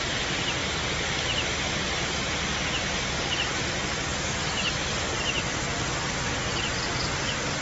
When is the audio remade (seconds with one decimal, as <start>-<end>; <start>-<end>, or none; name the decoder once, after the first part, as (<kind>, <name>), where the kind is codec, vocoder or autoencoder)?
none